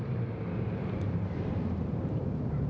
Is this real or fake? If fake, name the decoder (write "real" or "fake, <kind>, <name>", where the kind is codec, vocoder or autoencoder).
fake, vocoder, BigVGAN v2